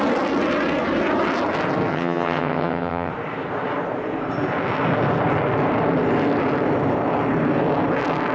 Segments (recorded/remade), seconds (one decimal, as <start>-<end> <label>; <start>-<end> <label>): 0.0-1.9 recorded; 1.9-3.1 remade; 3.1-8.3 recorded